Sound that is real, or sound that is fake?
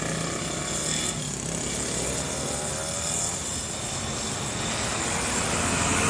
real